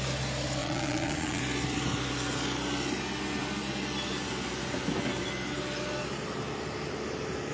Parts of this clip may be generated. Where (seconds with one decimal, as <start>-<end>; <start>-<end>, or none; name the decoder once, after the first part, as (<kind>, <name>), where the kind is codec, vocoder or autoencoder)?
0.6-1.4 (vocoder, Vocos)